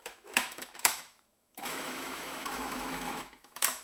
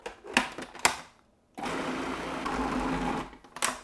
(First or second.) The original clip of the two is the second